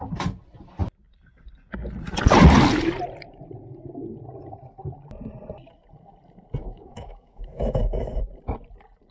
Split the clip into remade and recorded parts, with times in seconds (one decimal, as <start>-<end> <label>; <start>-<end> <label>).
0.0-6.6 recorded; 6.6-8.2 remade; 8.2-9.1 recorded